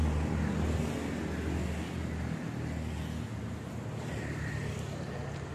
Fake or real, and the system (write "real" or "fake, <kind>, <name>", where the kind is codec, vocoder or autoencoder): real